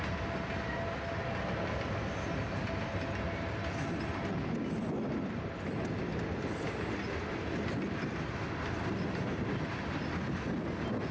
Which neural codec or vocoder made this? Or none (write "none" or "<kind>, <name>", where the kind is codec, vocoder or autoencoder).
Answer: none